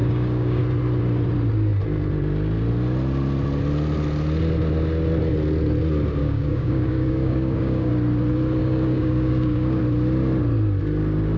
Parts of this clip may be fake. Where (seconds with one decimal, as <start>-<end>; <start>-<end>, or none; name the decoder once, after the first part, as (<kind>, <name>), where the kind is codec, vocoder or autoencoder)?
0.0-0.6 (codec, DAC); 6.2-7.9; 8.6-9.8